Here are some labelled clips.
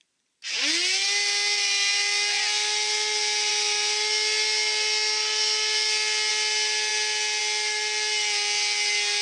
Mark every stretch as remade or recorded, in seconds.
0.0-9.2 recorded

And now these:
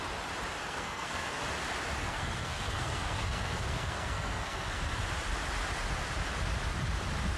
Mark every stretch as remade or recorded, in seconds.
0.0-0.6 recorded; 0.6-1.4 remade; 1.4-2.0 recorded; 2.0-5.0 remade; 5.0-7.4 recorded

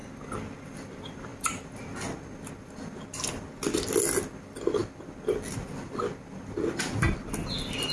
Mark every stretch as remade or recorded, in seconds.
0.0-7.9 recorded

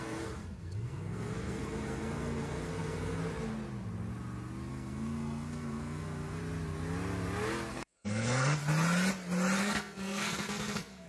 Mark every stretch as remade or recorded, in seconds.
0.0-3.2 remade; 3.2-4.7 recorded; 4.7-6.4 remade; 6.4-7.7 recorded; 7.7-8.6 remade; 8.6-9.6 recorded; 9.6-11.1 remade

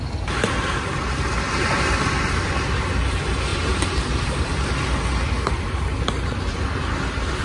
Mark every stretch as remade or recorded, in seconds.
0.0-3.5 recorded; 3.5-4.7 remade; 4.7-7.4 recorded